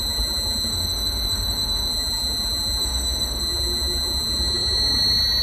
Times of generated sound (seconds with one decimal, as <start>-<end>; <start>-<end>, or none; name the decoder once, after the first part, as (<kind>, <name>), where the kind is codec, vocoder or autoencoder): 0.7-1.9 (autoencoder, DAC-VAE); 2.8-3.4